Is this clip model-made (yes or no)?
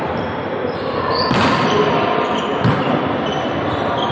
no